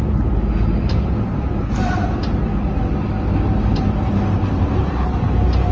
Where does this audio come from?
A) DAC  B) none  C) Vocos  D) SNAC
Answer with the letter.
B